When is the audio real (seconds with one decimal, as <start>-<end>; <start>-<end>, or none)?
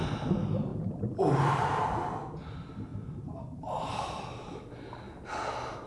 0.0-0.7; 2.5-2.9; 4.2-5.9